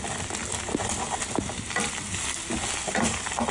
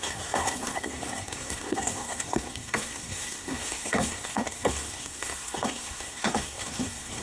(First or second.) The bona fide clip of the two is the first